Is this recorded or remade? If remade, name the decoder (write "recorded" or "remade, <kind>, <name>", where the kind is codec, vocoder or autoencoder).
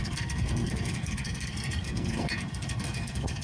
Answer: remade, codec, SNAC